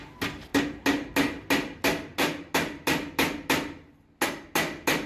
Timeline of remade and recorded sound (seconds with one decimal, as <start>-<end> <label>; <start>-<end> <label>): 0.0-5.1 recorded